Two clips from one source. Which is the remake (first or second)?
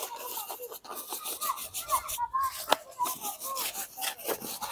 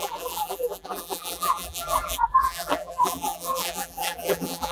second